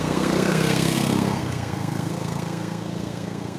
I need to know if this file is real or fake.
fake